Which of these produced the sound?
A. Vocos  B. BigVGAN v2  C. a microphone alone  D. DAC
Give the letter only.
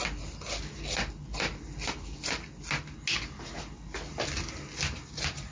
C